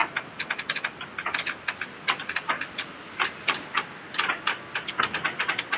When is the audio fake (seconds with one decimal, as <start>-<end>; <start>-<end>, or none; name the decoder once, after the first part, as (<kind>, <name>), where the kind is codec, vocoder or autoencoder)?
none